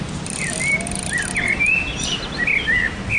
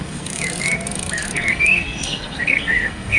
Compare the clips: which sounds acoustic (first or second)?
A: first